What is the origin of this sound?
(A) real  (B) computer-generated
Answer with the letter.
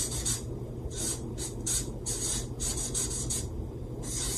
B